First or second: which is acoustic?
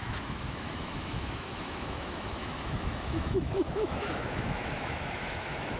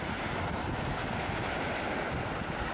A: second